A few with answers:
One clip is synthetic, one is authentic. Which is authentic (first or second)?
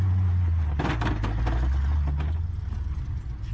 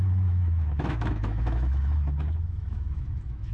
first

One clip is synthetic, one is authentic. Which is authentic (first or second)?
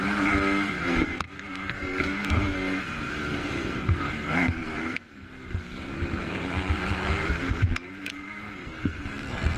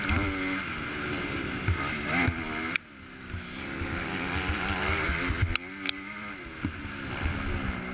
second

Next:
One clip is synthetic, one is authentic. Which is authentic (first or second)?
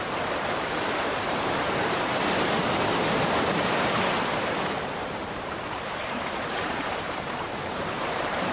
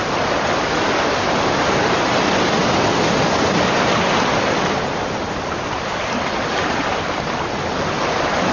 second